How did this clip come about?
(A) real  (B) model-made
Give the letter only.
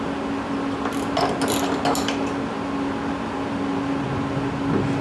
A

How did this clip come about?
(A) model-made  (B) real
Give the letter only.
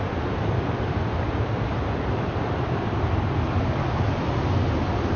B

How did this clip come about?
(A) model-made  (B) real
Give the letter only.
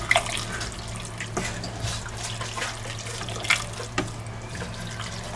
B